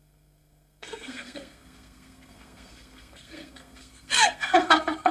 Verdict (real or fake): fake